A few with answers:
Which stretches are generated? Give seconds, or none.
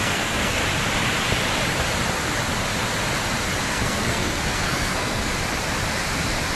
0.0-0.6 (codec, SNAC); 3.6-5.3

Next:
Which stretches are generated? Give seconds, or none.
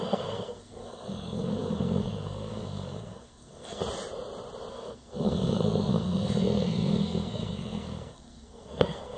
0.0-3.8 (codec, SNAC); 4.7-9.2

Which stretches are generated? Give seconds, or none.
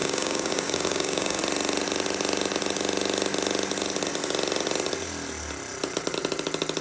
0.0-1.4 (codec, DAC)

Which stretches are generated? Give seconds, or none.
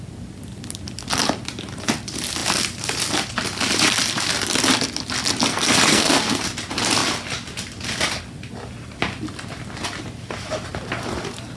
5.5-6.4 (codec, SNAC)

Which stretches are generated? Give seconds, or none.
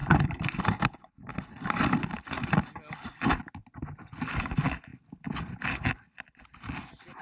none